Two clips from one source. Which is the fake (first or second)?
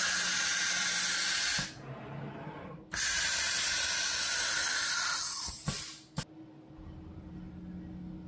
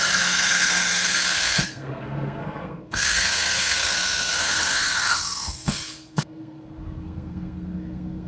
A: second